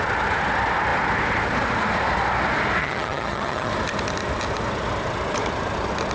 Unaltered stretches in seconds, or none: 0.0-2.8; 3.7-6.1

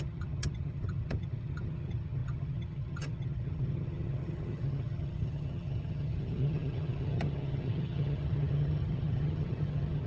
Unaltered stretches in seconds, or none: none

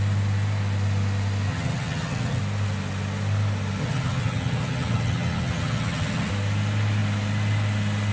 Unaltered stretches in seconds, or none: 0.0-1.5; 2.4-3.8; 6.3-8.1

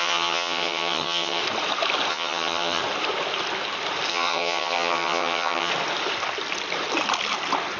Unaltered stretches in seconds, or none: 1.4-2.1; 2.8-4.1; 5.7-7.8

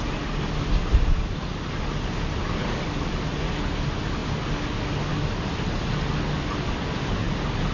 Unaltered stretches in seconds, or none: 0.0-7.7

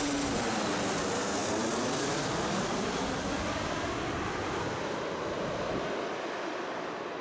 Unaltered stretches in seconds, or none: 0.0-7.2

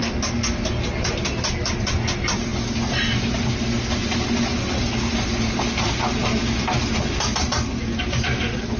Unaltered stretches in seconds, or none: 0.0-8.8